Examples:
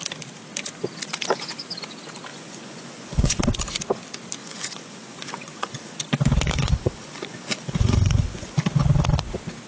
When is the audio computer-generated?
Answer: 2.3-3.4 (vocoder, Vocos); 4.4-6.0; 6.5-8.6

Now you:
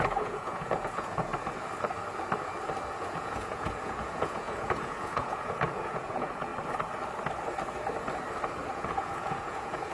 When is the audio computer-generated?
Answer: 0.0-1.3 (vocoder, Vocos); 3.0-6.5; 8.7-9.9

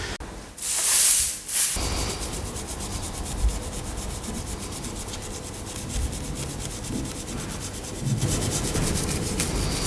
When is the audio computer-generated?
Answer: none

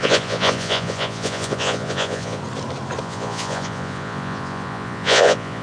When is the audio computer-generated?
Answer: 0.0-2.4 (vocoder, Vocos); 3.0-5.6

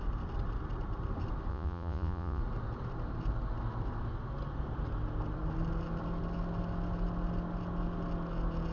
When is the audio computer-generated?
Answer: 1.5-2.4 (vocoder, Vocos)

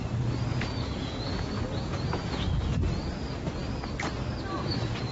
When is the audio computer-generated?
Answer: 0.5-2.8 (vocoder, Vocos)

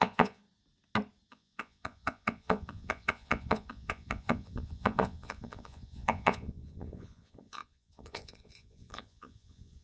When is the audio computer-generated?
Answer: 0.0-0.4 (vocoder, Vocos); 1.3-9.8

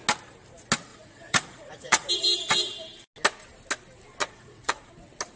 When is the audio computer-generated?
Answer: 0.9-2.1 (vocoder, Vocos); 4.2-4.9